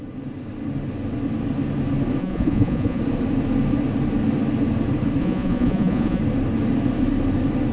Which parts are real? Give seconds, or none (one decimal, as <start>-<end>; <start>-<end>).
0.0-2.2; 3.0-5.2; 6.2-7.7